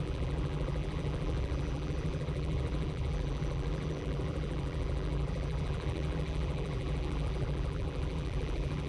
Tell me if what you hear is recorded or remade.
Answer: remade